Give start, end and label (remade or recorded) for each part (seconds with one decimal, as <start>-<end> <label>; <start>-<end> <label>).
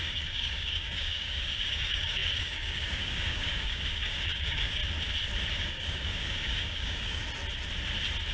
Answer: 0.0-4.8 remade; 4.8-5.5 recorded; 5.5-7.2 remade; 7.2-8.3 recorded